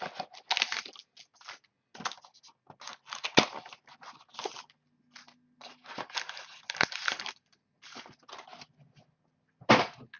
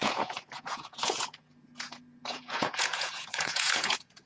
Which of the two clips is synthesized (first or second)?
second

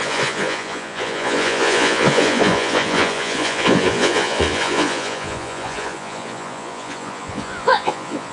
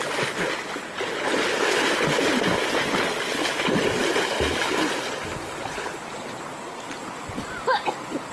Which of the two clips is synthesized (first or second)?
first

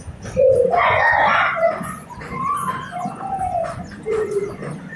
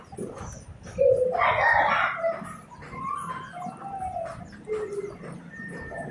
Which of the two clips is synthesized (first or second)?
first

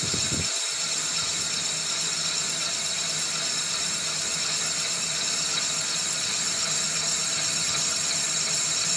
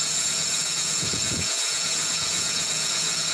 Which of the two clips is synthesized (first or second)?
second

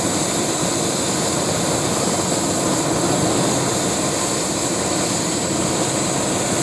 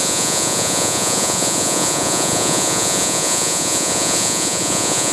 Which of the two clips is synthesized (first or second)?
second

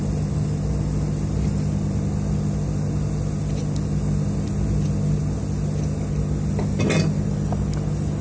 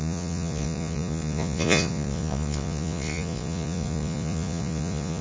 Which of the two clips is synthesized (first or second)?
second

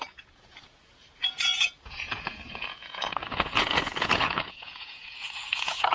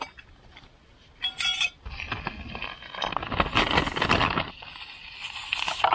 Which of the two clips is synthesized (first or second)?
first